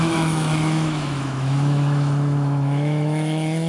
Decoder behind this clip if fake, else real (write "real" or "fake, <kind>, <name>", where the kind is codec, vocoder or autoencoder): fake, autoencoder, DAC-VAE